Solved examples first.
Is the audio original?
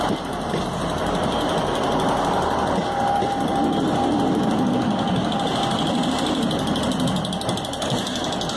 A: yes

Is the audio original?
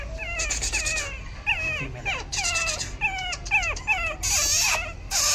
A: yes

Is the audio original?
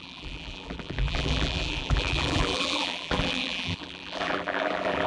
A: no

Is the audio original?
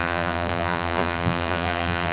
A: no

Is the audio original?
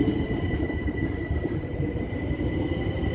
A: no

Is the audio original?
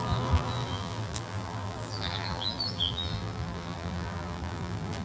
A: no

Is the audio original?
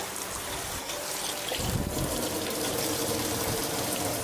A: no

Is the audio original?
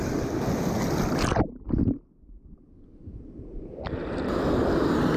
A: yes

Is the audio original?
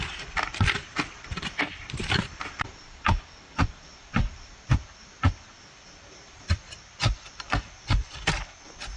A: no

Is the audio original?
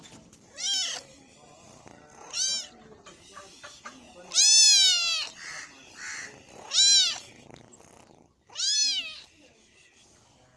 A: yes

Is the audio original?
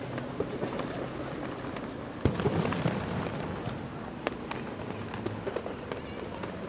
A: yes